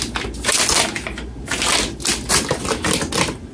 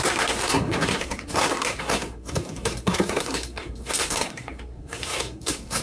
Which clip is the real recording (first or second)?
first